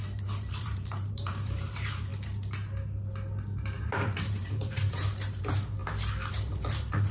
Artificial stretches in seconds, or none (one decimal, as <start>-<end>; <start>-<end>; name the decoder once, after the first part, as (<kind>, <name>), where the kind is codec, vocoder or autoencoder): 0.0-2.1 (vocoder, BigVGAN v2); 3.8-5.8; 6.3-7.1